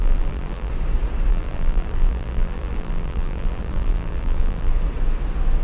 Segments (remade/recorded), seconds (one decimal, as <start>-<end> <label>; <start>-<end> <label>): 0.0-0.7 remade; 0.7-1.3 recorded; 1.3-4.7 remade; 4.7-5.6 recorded